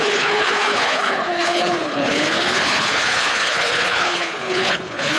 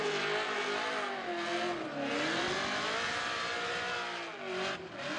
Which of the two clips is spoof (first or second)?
first